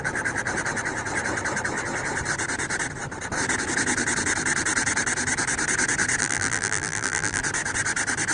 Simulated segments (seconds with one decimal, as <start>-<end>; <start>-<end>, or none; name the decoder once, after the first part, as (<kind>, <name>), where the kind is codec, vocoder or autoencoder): 6.2-7.4 (vocoder, BigVGAN v2)